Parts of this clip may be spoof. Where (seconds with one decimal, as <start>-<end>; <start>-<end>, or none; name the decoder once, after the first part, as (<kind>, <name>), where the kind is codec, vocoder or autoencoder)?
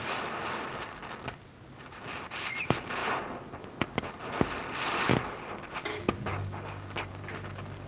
5.9-7.1 (codec, DAC)